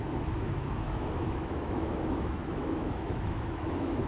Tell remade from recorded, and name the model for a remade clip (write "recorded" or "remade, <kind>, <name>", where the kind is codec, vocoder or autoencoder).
remade, autoencoder, DAC-VAE